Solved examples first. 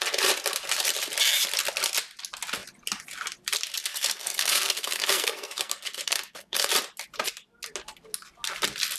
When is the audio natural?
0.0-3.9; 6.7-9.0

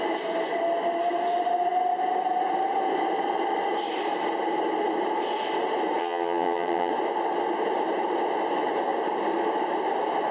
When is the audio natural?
0.0-6.0; 6.9-10.3

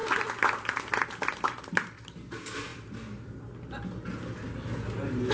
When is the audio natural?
0.0-5.3

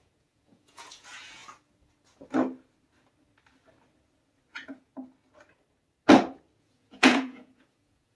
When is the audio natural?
1.4-4.5; 4.9-6.6

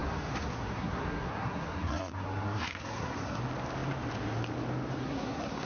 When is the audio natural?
3.4-5.0